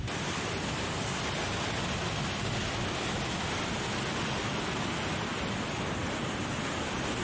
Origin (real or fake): real